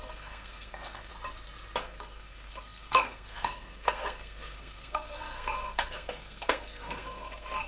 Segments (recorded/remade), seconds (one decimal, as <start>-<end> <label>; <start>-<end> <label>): 0.0-1.1 remade; 1.1-1.8 recorded; 1.8-7.7 remade